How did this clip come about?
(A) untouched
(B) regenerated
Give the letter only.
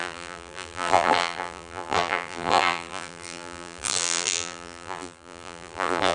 B